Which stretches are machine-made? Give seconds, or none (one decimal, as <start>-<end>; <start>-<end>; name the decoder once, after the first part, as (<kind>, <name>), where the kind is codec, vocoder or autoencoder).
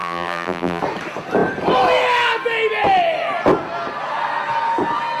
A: 0.0-0.8 (vocoder, BigVGAN v2)